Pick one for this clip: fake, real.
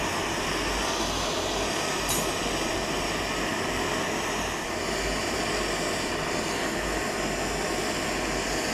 real